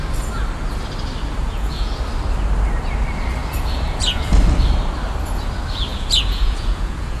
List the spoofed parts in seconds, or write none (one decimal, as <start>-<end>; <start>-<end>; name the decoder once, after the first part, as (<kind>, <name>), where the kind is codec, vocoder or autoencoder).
1.4-2.0 (vocoder, Vocos); 3.4-4.3; 5.9-7.2